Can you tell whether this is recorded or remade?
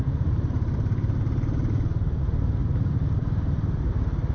remade